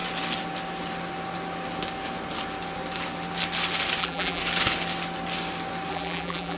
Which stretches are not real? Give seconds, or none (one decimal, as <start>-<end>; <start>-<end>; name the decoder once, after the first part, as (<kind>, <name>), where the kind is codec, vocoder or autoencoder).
4.0-4.4 (vocoder, BigVGAN v2); 5.9-6.6